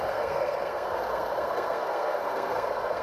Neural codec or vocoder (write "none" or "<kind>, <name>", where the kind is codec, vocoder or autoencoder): codec, SNAC